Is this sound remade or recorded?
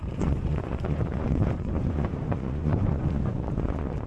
remade